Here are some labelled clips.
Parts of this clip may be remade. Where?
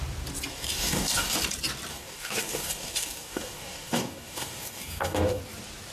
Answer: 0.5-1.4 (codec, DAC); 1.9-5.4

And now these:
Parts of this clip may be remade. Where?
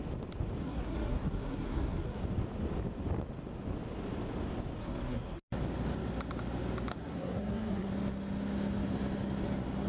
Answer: 0.6-2.2 (codec, SNAC); 4.8-5.4; 6.9-7.9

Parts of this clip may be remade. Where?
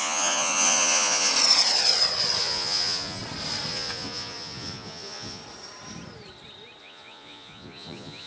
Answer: 0.0-1.3 (vocoder, Vocos); 2.4-3.2; 3.7-5.4; 6.8-8.3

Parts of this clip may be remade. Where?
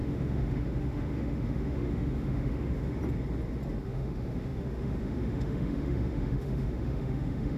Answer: 0.0-3.0 (autoencoder, DAC-VAE); 3.8-7.6